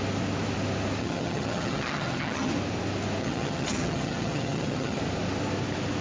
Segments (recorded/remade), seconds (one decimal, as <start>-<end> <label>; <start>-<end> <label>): 0.0-1.0 recorded; 1.0-2.5 remade; 2.5-3.2 recorded; 3.2-5.0 remade; 5.0-6.0 recorded